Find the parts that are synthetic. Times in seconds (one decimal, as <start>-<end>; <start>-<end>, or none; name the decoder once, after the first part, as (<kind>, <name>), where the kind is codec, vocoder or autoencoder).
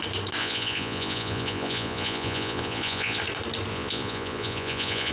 0.4-3.2 (vocoder, Vocos); 3.7-5.1